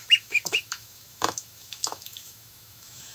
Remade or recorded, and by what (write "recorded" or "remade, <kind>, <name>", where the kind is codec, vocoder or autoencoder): remade, autoencoder, DAC-VAE